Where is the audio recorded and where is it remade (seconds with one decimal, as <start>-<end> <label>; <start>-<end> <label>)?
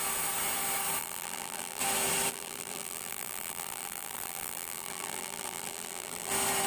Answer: 0.0-1.0 recorded; 1.0-1.8 remade; 1.8-2.3 recorded; 2.3-6.3 remade; 6.3-6.7 recorded